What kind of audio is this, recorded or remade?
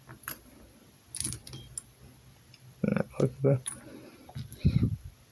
recorded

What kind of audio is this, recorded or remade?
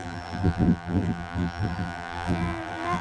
remade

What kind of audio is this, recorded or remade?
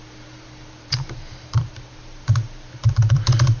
remade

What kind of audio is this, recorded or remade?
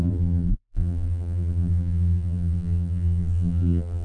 remade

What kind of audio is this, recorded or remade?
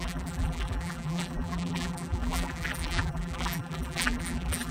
remade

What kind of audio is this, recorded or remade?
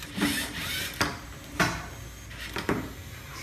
recorded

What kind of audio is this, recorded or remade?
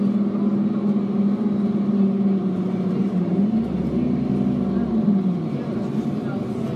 recorded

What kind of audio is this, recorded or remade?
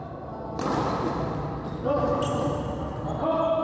recorded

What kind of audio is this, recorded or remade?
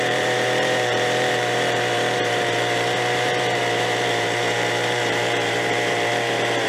remade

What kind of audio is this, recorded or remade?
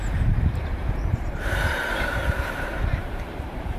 remade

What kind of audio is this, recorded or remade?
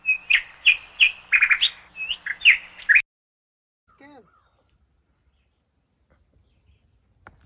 recorded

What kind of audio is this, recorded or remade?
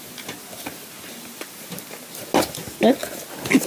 recorded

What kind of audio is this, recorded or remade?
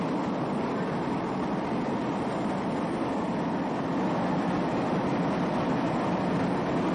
remade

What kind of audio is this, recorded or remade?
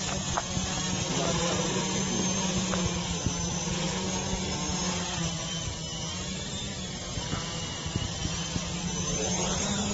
recorded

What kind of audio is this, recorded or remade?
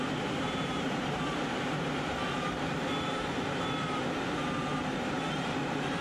remade